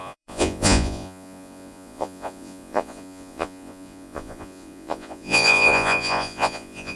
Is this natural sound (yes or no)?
no